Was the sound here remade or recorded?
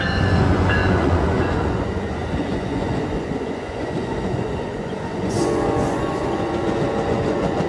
remade